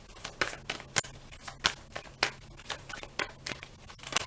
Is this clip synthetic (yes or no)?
no